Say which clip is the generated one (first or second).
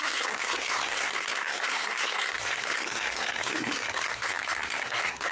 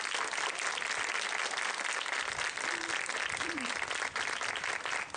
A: first